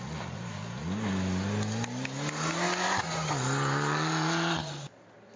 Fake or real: real